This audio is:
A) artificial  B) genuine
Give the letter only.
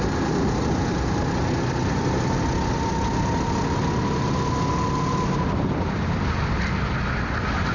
B